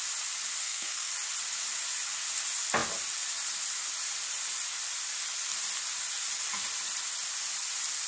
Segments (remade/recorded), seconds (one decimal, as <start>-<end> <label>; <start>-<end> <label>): 0.0-0.6 recorded; 0.6-1.1 remade; 1.1-8.1 recorded